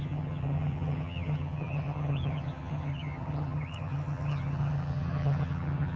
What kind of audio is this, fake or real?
fake